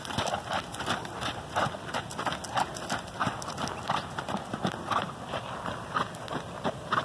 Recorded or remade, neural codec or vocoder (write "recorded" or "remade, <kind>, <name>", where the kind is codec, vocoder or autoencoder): recorded